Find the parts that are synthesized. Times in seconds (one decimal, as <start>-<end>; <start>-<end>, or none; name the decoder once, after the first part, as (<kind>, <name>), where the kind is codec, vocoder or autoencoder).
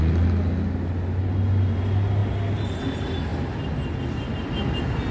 none